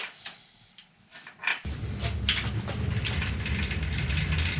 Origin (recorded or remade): recorded